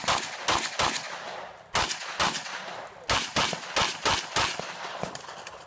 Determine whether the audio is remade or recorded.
recorded